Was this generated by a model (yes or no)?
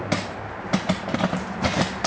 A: no